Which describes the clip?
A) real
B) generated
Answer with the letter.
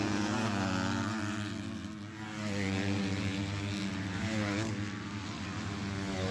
A